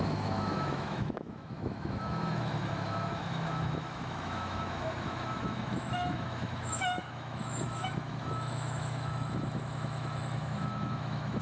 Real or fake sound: fake